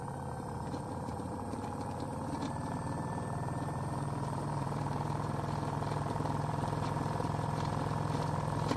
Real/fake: fake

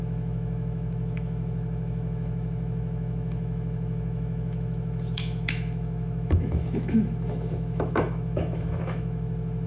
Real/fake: fake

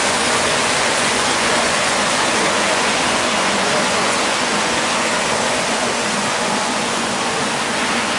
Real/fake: fake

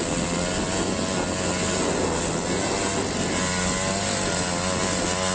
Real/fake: real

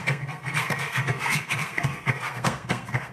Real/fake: fake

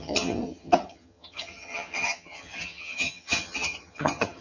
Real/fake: fake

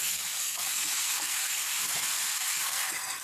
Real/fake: fake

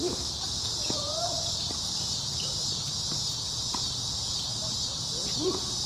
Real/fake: fake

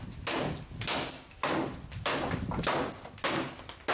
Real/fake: real